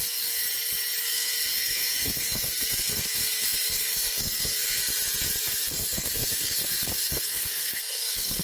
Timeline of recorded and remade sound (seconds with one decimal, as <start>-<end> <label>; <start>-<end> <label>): 0.0-0.4 remade; 0.4-1.0 recorded; 1.0-4.8 remade; 4.8-5.4 recorded; 5.4-8.4 remade